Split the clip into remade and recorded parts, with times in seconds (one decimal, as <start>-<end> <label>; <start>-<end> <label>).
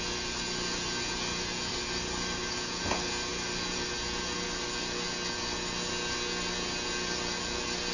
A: 0.0-1.7 recorded; 1.7-2.8 remade; 2.8-7.9 recorded